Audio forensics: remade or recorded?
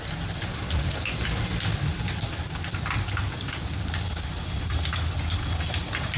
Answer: recorded